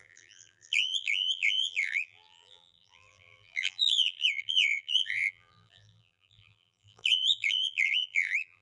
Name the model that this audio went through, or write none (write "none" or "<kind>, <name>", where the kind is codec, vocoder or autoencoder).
vocoder, BigVGAN v2